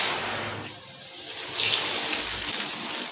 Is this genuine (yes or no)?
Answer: yes